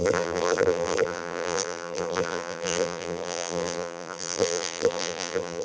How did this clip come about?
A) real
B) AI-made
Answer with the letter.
B